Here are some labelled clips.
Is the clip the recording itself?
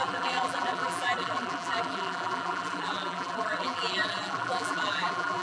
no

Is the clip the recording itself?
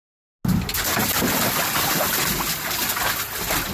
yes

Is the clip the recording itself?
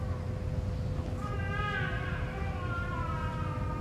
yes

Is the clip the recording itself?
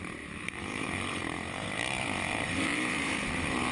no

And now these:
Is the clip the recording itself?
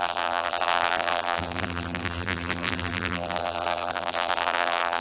no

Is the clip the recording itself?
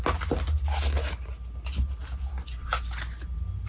yes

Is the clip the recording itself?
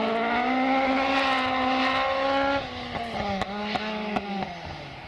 yes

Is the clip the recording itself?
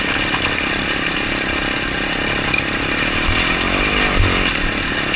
no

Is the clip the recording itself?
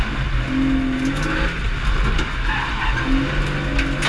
yes